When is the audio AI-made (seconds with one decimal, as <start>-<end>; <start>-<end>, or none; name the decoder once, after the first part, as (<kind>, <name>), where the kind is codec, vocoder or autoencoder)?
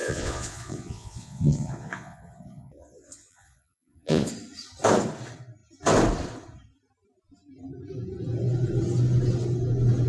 0.0-4.3 (vocoder, Vocos)